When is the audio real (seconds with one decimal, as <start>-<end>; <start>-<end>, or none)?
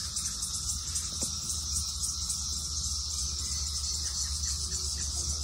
0.0-5.4